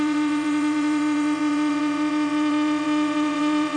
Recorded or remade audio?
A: remade